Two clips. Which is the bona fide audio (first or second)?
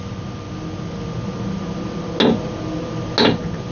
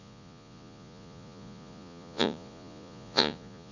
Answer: first